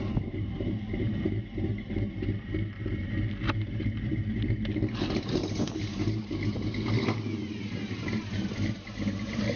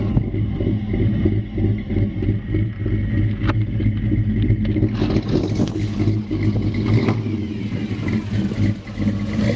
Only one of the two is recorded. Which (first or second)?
second